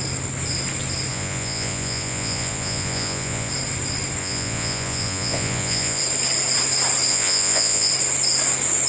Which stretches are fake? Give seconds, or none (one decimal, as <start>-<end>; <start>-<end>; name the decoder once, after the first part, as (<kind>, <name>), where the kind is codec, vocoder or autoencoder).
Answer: 1.1-3.5 (vocoder, Vocos); 4.2-6.0; 7.1-7.9